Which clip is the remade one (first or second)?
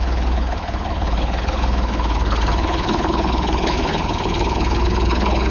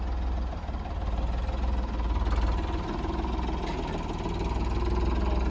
first